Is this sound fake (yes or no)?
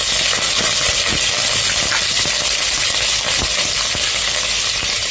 no